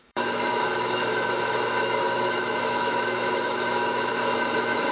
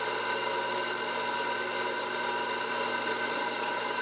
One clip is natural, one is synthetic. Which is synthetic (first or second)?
first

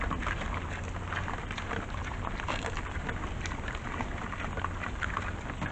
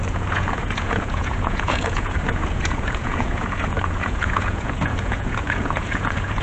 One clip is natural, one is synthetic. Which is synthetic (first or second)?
second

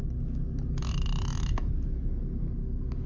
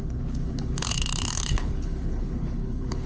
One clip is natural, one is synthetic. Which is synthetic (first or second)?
second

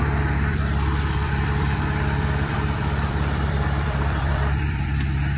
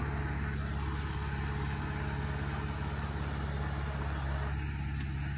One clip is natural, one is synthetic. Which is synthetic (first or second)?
first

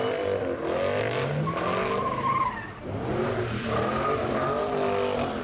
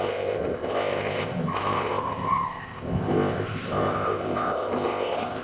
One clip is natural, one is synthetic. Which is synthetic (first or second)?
second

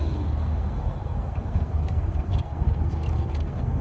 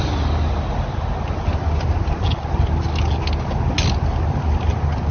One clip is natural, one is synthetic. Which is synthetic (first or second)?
first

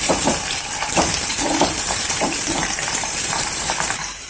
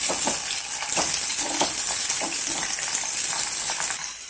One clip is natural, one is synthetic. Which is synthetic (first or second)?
first